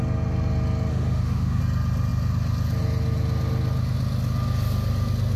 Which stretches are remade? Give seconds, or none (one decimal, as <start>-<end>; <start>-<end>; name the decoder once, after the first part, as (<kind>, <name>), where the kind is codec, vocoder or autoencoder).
0.9-1.6 (autoencoder, DAC-VAE)